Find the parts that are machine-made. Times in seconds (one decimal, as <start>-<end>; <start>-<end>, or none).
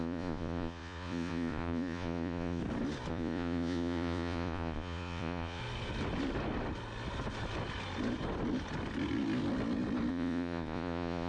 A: 0.0-2.6; 3.1-5.6; 10.1-11.3